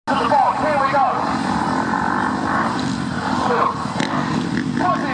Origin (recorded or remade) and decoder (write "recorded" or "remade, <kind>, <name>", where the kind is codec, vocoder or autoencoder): recorded